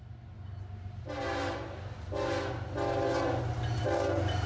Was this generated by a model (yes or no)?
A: no